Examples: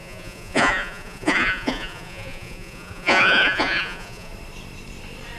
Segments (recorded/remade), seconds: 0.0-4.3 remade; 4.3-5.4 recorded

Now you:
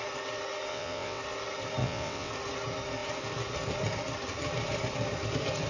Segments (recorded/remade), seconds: 0.0-0.7 recorded; 0.7-1.2 remade; 1.2-1.8 recorded; 1.8-2.3 remade; 2.3-5.7 recorded

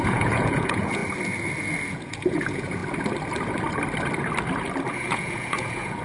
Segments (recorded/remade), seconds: 0.0-1.0 remade; 1.0-1.9 recorded; 1.9-2.8 remade; 2.8-4.9 recorded; 4.9-6.0 remade

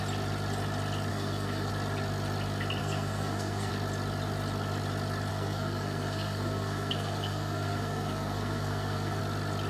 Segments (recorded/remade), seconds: 0.0-1.1 recorded; 1.1-1.7 remade; 1.7-2.8 recorded; 2.8-3.7 remade; 3.7-5.3 recorded; 5.3-9.2 remade; 9.2-9.7 recorded

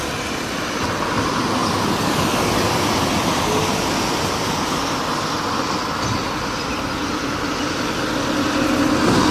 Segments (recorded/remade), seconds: 0.0-9.3 recorded

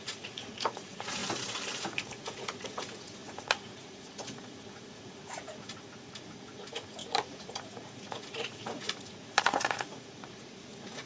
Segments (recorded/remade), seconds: 0.0-1.2 remade; 1.2-1.9 recorded; 1.9-11.1 remade

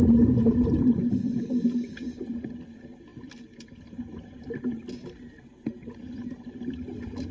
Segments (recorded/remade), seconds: 0.0-0.4 recorded; 0.4-1.4 remade; 1.4-7.3 recorded